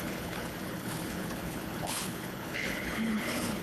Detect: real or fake fake